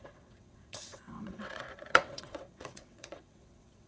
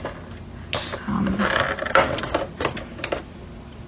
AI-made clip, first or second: first